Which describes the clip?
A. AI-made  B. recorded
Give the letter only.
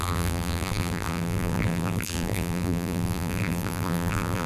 A